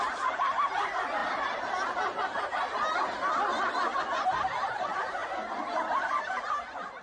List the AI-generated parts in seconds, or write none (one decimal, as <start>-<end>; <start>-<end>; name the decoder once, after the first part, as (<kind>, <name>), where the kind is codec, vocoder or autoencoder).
0.0-1.2 (vocoder, BigVGAN v2); 4.0-5.2; 6.0-7.0